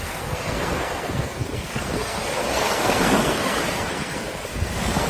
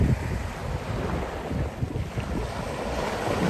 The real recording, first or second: second